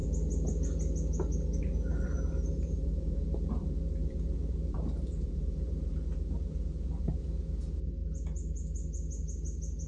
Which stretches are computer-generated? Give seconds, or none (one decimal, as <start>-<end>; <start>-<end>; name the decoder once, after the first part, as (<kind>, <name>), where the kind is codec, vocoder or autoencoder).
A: 1.6-8.0 (vocoder, BigVGAN v2)